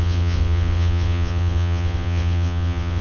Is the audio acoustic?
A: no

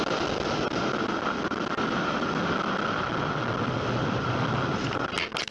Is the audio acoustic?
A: yes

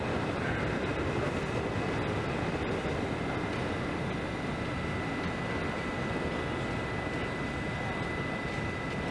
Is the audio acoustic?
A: yes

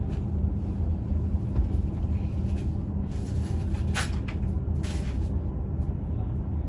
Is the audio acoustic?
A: yes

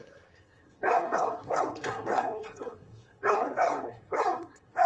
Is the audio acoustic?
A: no